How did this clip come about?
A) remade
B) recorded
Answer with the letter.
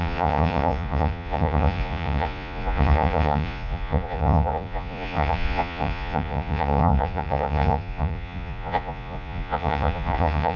A